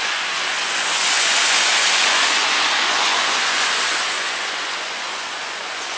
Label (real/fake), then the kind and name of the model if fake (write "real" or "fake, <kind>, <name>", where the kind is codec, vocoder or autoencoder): fake, vocoder, Vocos